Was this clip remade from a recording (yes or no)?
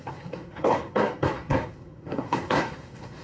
yes